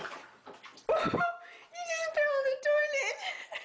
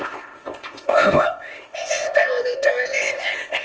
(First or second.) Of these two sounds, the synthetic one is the second